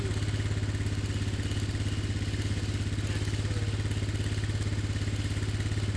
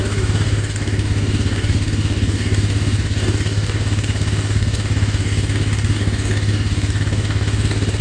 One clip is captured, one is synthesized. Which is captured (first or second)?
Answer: first